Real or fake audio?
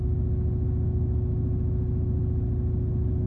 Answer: real